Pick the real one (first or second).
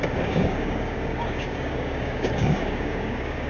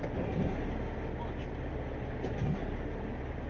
second